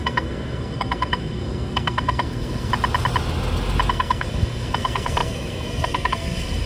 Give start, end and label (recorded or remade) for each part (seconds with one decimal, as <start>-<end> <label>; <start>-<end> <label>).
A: 0.0-2.7 remade; 2.7-3.9 recorded; 3.9-6.7 remade